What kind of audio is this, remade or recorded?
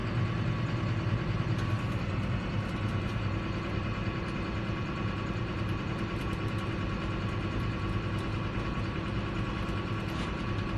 recorded